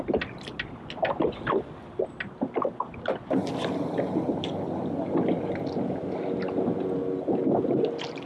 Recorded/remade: recorded